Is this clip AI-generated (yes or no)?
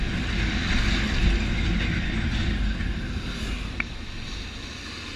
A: no